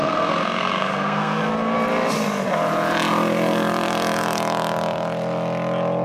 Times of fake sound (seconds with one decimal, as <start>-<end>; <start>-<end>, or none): 0.0-1.4